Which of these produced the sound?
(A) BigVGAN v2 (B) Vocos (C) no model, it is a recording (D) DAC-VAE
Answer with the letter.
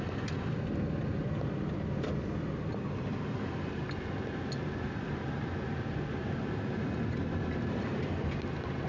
C